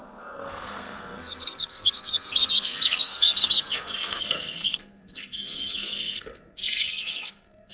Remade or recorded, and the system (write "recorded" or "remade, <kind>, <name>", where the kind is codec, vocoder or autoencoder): remade, codec, SNAC